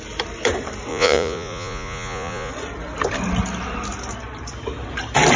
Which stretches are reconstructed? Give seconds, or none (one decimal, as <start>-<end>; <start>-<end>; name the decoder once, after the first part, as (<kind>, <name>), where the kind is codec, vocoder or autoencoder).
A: 0.9-2.5 (vocoder, Vocos)